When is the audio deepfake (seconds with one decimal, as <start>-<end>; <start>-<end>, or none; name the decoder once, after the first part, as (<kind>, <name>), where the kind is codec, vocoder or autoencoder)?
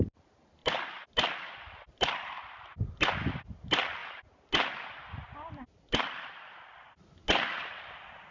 none